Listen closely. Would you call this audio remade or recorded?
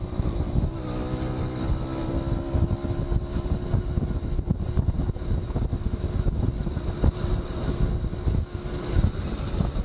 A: recorded